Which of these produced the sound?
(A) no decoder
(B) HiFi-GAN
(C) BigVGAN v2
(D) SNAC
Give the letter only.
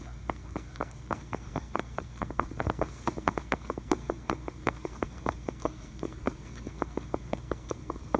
D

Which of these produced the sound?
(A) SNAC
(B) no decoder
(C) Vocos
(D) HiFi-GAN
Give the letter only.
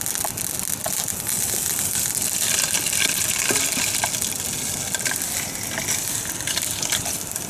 B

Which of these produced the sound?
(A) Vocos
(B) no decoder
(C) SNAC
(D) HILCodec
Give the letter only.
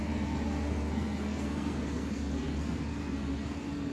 C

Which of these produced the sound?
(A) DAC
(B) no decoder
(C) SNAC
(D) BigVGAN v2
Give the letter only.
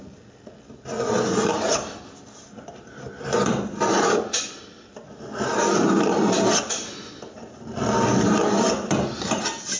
B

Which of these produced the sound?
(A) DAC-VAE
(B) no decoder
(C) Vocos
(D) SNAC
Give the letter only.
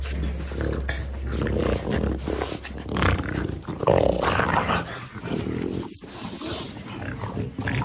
B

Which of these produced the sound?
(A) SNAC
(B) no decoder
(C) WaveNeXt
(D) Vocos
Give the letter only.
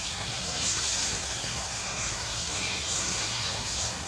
A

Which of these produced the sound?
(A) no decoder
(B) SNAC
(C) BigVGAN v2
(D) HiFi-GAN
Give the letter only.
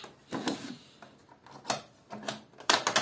A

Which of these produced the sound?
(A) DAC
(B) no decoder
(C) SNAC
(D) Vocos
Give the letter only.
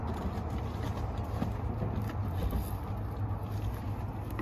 B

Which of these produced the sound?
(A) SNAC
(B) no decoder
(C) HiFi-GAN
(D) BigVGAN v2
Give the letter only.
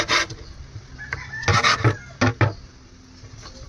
B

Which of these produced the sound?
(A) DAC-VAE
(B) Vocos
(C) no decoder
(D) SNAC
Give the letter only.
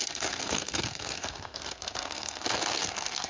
D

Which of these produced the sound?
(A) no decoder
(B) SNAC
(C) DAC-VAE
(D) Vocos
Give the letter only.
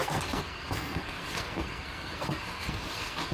B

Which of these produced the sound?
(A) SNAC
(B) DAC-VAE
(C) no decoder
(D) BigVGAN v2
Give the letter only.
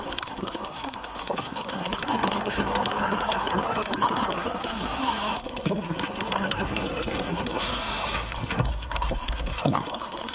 A